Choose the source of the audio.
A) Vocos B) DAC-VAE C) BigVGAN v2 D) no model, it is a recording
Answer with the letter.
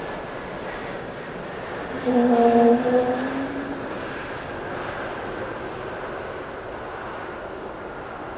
D